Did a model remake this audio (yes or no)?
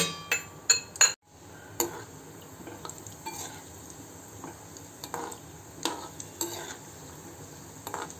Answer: no